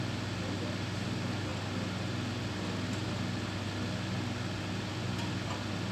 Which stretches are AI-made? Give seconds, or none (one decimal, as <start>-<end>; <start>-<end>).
none

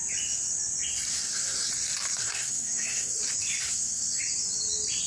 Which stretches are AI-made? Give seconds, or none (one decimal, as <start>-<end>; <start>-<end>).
1.1-1.7; 2.2-3.2; 3.6-4.2

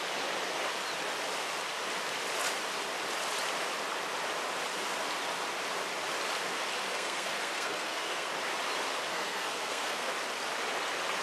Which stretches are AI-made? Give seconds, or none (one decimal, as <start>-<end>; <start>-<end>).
6.9-8.3; 9.1-10.1

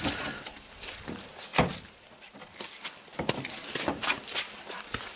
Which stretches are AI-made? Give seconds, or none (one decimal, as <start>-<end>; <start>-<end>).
none

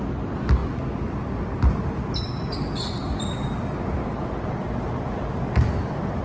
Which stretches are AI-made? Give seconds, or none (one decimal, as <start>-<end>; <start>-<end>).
none

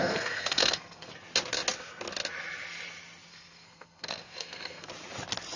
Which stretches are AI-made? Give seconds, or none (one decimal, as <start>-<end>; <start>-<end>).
0.0-1.1; 3.3-4.9

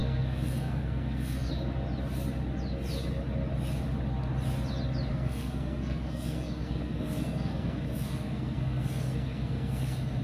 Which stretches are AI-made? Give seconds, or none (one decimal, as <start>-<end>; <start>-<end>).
0.0-1.5; 5.1-10.2